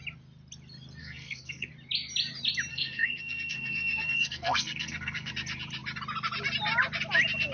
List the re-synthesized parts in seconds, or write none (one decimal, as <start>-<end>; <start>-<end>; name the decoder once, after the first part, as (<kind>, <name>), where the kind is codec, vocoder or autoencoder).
1.0-1.7 (codec, SNAC); 2.7-5.3